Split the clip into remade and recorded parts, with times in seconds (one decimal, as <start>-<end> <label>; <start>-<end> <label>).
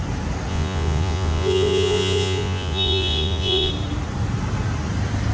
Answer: 0.0-0.5 recorded; 0.5-3.7 remade; 3.7-5.3 recorded